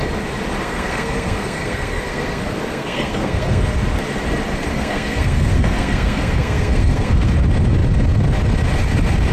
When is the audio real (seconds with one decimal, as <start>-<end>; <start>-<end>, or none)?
0.0-0.6; 3.6-4.7; 7.3-9.3

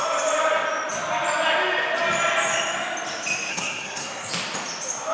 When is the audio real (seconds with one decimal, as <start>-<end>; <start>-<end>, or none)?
0.0-3.5; 4.3-5.1